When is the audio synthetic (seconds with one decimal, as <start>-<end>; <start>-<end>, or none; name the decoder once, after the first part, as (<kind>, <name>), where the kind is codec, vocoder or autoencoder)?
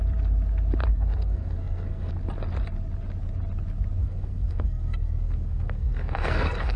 0.9-2.1 (codec, SNAC); 4.0-6.8